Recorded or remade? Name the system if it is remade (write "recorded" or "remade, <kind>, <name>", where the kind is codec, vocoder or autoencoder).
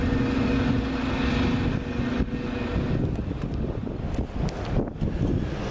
recorded